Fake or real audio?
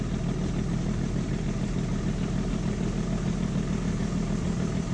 real